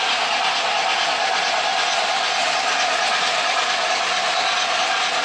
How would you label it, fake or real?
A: real